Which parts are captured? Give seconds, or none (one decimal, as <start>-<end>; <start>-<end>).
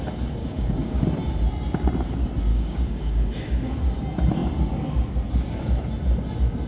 0.0-0.4; 1.0-2.5; 3.8-6.7